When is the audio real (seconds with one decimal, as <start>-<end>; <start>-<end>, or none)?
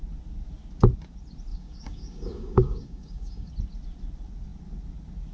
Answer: 0.0-1.5; 3.5-5.3